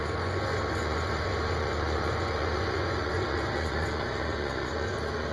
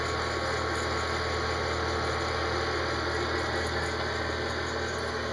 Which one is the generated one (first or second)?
first